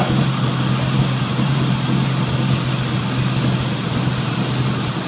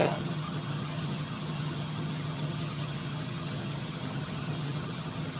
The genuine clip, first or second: first